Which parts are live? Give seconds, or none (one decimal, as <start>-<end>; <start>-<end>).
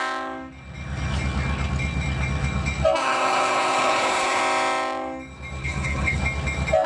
0.0-3.0; 4.4-5.6; 6.2-6.9